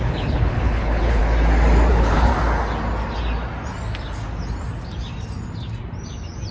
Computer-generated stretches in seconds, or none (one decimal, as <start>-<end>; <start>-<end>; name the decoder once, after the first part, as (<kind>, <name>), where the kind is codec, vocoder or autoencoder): 0.0-1.2 (codec, HILCodec); 1.9-2.3